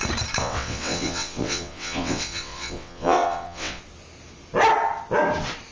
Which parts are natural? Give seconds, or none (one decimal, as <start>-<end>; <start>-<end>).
0.0-0.4; 3.8-5.7